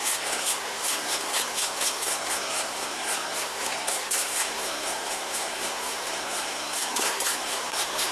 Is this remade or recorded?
remade